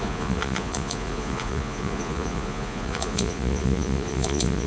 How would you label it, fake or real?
fake